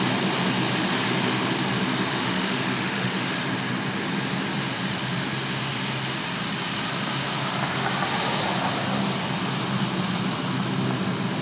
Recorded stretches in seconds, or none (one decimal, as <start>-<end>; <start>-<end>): 0.0-2.1; 3.3-11.4